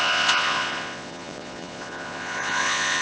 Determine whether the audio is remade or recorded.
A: remade